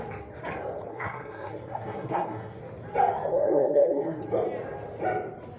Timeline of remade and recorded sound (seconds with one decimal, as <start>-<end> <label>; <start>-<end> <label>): 0.0-0.9 recorded; 0.9-2.6 remade; 2.6-3.3 recorded; 3.3-4.2 remade; 4.2-5.6 recorded